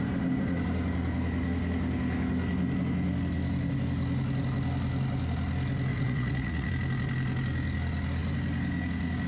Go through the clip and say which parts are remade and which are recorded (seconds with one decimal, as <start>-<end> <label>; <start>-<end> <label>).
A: 0.0-5.9 recorded; 5.9-6.7 remade; 6.7-9.3 recorded